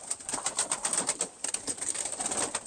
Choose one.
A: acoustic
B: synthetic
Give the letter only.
A